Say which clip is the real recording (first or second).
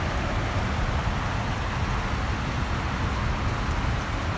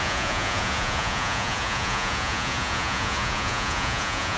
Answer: first